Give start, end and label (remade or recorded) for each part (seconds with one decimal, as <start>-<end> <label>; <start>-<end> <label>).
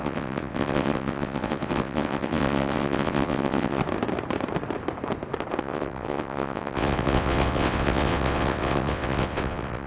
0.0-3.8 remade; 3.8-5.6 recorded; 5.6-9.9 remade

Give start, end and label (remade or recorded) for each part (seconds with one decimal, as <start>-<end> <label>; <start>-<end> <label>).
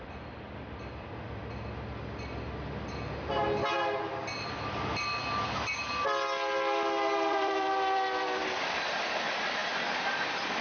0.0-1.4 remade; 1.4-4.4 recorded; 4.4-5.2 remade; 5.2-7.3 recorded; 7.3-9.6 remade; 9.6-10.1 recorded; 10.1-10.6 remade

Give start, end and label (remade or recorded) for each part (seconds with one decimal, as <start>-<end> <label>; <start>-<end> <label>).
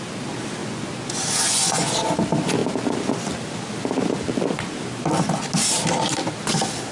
0.0-0.6 recorded; 0.6-1.9 remade; 1.9-6.9 recorded